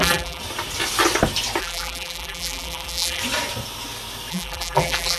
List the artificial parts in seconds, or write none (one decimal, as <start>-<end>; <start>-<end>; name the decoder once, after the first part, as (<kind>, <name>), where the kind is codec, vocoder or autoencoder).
0.0-0.4 (vocoder, BigVGAN v2); 1.6-3.2; 4.3-5.2